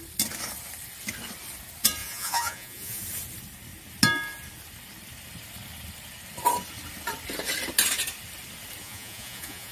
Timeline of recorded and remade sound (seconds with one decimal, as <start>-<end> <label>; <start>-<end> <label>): 0.0-2.0 recorded; 2.0-3.0 remade; 3.0-8.8 recorded; 8.8-9.7 remade

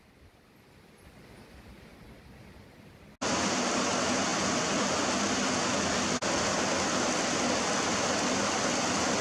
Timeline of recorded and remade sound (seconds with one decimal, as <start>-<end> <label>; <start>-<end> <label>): 0.0-9.2 recorded

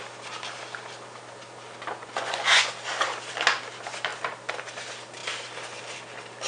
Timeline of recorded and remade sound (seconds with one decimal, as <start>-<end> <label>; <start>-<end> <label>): 0.0-2.0 recorded; 2.0-2.7 remade; 2.7-6.5 recorded

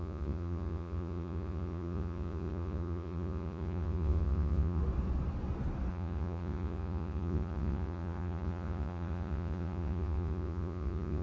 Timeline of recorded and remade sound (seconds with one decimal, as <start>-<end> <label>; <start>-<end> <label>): 0.0-4.8 remade; 4.8-5.9 recorded; 5.9-11.2 remade